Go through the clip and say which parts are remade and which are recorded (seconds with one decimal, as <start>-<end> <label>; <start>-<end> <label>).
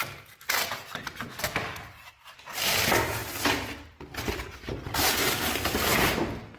0.0-6.6 recorded